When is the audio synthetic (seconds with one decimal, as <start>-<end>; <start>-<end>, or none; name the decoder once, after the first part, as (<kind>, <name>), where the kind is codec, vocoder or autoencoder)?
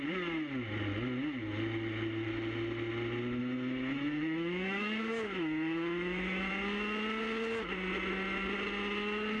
3.4-6.5 (autoencoder, DAC-VAE)